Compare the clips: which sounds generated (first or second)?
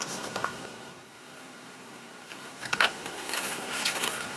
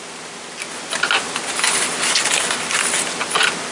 first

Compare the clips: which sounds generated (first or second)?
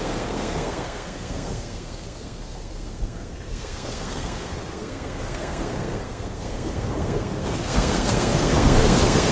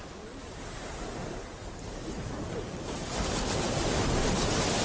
first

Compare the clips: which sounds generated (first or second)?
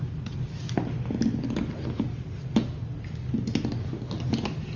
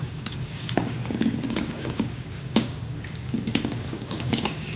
second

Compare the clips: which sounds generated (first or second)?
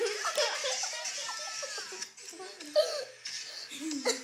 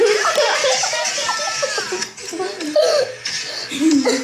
second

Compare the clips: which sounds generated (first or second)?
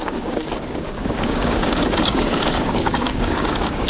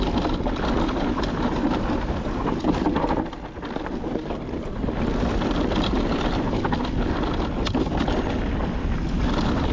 first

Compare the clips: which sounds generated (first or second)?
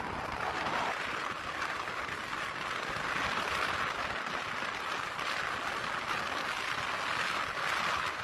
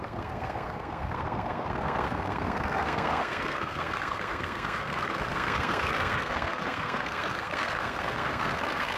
second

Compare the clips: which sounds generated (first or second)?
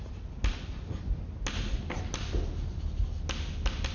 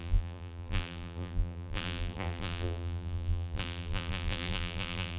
second